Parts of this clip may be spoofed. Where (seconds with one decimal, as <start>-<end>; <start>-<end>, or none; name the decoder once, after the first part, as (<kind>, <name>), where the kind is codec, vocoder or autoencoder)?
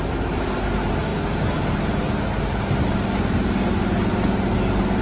none